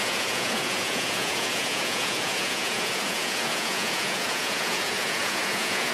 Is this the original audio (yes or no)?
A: no